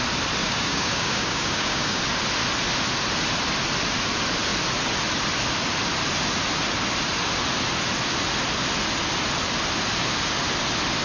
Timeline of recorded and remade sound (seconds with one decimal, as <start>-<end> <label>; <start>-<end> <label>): 0.0-0.4 recorded; 0.4-2.0 remade; 2.0-11.0 recorded